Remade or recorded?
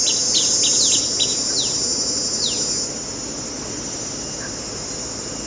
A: recorded